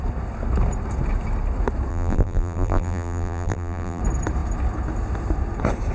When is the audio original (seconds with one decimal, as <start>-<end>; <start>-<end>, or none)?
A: 0.0-1.9; 4.0-5.9